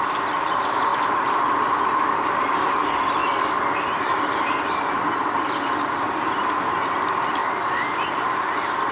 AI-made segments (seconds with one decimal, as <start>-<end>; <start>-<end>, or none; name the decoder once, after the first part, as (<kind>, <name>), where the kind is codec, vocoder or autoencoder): none